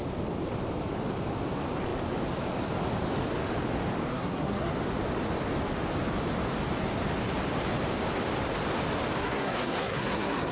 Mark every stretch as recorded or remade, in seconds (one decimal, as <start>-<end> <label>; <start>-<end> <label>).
0.0-4.1 recorded; 4.1-4.7 remade; 4.7-9.2 recorded; 9.2-10.5 remade